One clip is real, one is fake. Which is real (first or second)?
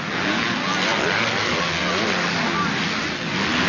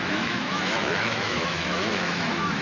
first